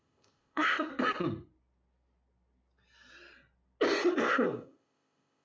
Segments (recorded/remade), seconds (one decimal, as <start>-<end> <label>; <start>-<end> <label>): 0.0-0.9 remade; 0.9-4.1 recorded; 4.1-5.4 remade